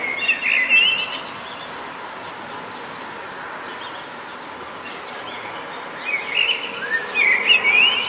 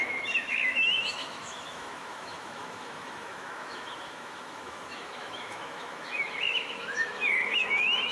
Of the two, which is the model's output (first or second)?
second